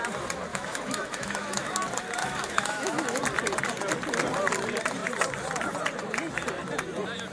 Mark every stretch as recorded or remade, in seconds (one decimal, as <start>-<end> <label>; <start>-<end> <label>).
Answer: 0.0-0.5 recorded; 0.5-1.7 remade; 1.7-2.2 recorded; 2.2-3.2 remade; 3.2-7.3 recorded